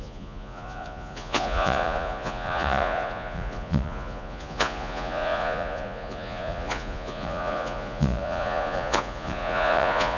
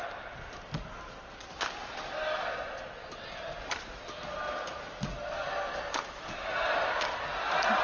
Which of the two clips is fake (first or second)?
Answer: first